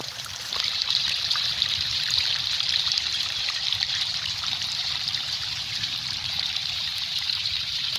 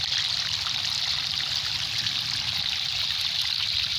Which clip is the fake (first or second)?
first